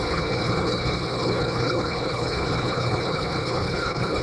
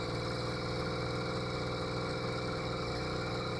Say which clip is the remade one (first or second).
first